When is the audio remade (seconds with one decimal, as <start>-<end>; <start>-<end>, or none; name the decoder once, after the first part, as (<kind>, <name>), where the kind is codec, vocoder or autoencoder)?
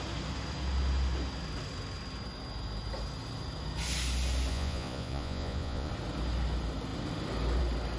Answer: 4.5-5.9 (vocoder, Vocos)